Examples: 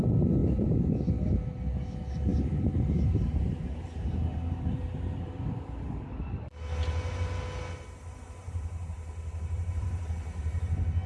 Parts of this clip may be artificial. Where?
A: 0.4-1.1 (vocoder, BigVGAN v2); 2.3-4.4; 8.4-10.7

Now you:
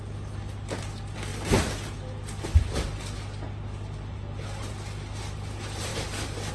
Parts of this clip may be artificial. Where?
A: 5.9-6.5 (vocoder, BigVGAN v2)

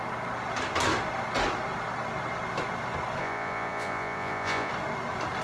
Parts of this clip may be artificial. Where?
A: 3.2-4.7 (vocoder, Vocos)

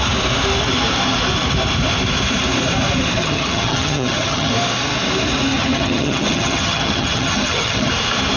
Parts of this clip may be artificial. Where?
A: 3.2-4.5 (vocoder, HiFi-GAN); 5.5-7.9

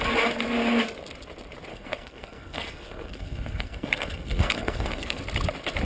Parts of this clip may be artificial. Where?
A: 1.7-5.2 (codec, SNAC)

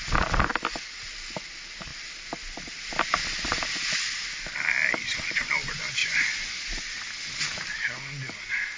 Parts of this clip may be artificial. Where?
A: 6.0-6.6 (vocoder, Vocos)

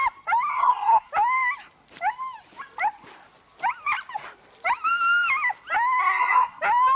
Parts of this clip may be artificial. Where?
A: 0.5-1.1 (codec, SNAC); 6.0-6.6

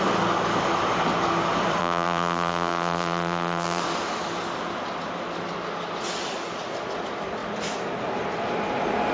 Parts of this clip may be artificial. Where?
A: 1.8-3.8 (vocoder, BigVGAN v2)